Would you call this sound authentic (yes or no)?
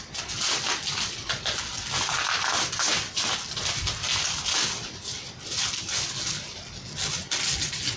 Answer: yes